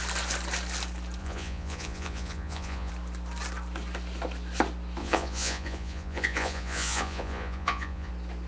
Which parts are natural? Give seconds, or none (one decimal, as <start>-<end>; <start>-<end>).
0.0-1.2; 2.9-5.0; 8.1-8.5